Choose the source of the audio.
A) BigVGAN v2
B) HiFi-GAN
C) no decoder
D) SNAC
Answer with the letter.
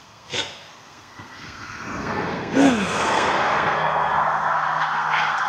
D